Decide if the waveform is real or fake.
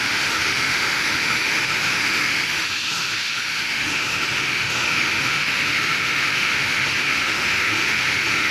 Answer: fake